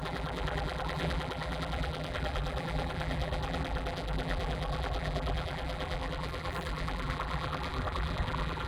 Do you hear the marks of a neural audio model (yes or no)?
yes